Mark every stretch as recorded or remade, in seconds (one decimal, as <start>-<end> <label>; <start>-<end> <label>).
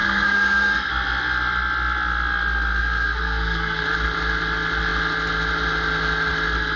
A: 0.0-0.9 remade; 0.9-2.8 recorded; 2.8-3.8 remade; 3.8-6.8 recorded